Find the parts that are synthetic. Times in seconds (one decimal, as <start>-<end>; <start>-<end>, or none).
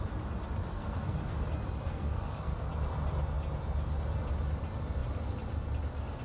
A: 0.7-1.5; 1.9-2.6